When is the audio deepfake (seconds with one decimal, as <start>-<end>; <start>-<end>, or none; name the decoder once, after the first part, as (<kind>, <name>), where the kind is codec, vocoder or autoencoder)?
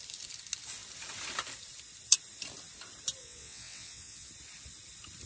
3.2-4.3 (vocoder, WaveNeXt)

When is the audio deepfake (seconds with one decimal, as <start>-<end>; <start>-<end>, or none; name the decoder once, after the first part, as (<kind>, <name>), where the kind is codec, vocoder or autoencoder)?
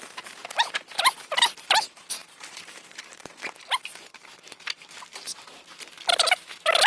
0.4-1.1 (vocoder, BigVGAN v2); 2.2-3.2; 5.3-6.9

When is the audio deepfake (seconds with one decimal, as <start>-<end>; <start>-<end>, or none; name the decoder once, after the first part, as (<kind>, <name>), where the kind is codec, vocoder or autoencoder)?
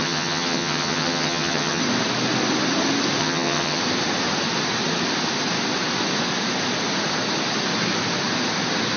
0.0-1.8 (vocoder, HiFi-GAN); 3.2-3.8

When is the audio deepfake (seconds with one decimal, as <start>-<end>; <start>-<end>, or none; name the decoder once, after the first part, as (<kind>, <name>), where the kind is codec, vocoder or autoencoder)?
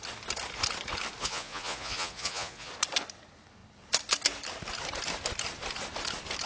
1.2-2.7 (vocoder, Vocos)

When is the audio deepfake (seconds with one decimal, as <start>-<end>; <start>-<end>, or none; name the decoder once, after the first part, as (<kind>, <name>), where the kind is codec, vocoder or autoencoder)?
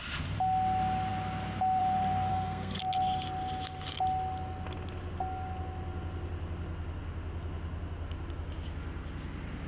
2.3-2.8 (codec, SNAC)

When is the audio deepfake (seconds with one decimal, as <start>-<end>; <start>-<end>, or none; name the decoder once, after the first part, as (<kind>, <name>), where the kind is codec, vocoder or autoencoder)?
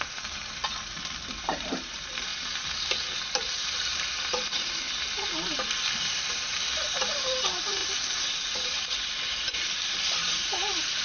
0.0-0.6 (vocoder, BigVGAN v2); 1.4-2.3; 3.4-11.0